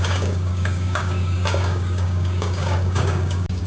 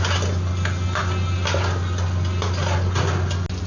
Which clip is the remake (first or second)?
first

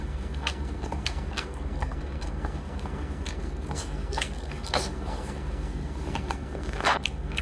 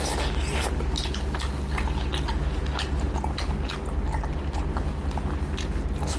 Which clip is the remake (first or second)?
first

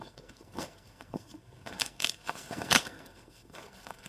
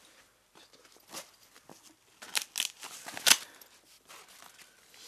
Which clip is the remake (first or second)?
first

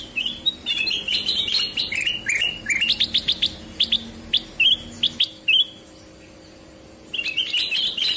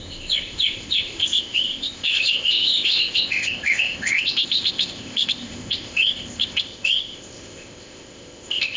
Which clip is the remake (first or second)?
second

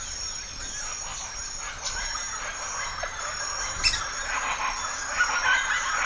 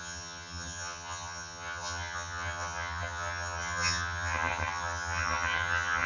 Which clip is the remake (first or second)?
second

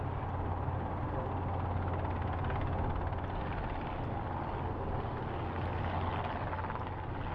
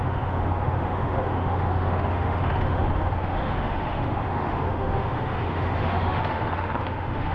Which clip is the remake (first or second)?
second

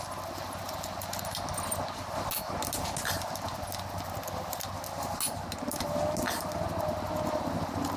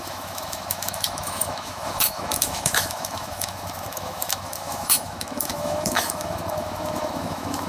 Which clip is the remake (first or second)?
second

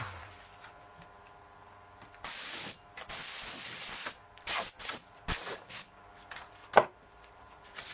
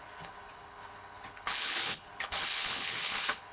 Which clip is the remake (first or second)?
second